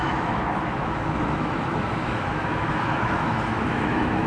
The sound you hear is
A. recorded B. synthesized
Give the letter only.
B